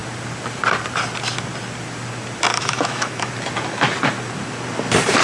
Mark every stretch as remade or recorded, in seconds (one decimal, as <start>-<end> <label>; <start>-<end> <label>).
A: 0.0-2.5 recorded; 2.5-3.3 remade; 3.3-5.2 recorded